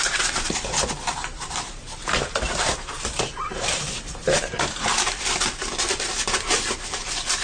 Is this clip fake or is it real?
fake